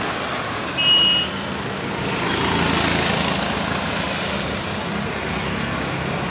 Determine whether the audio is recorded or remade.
recorded